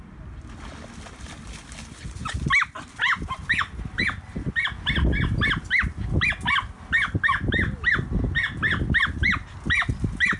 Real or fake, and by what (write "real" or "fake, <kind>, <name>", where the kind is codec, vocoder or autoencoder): real